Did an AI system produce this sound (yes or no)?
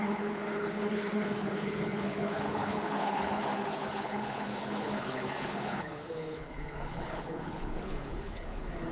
yes